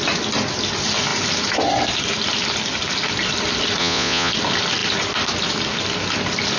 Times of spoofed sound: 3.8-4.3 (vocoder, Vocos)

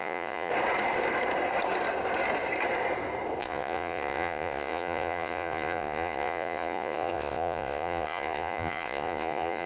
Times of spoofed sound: 0.0-0.5 (vocoder, Vocos); 3.4-9.7

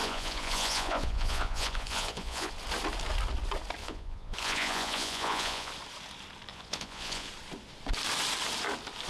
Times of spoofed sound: 0.0-2.5 (vocoder, Vocos); 3.8-5.7; 6.5-7.3